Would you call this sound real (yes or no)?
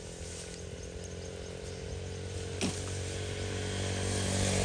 yes